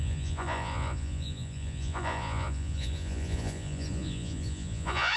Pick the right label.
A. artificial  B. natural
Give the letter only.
A